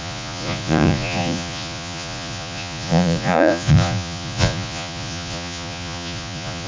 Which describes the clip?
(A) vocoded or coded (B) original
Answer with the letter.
A